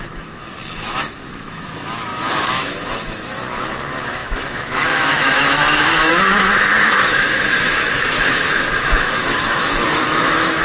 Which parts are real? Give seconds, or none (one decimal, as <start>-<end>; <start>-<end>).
none